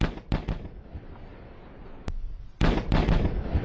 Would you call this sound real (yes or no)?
yes